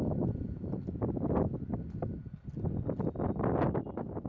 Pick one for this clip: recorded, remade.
recorded